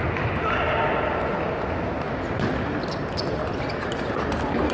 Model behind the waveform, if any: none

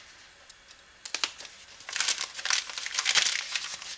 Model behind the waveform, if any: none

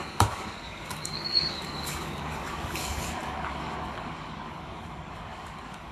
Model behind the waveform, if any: codec, DAC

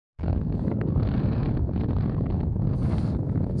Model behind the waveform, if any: codec, SNAC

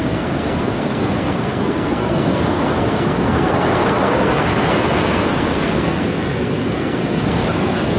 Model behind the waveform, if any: codec, SNAC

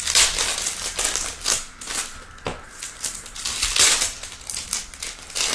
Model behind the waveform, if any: none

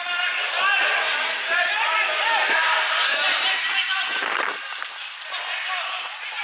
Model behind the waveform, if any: none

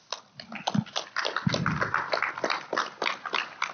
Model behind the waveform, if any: none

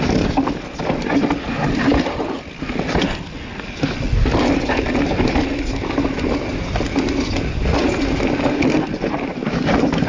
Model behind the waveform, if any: none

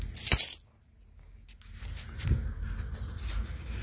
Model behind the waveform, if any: none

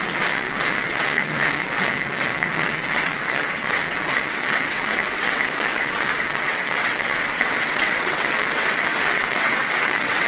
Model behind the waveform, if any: vocoder, WaveNeXt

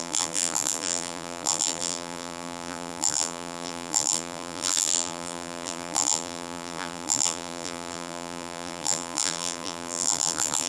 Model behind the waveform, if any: vocoder, BigVGAN v2